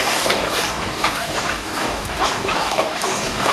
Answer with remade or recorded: remade